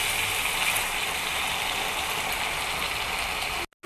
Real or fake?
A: real